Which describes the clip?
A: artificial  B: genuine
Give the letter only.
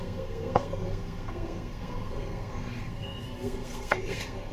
A